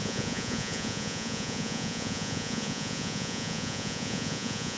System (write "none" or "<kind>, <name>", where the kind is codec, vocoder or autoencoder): vocoder, Vocos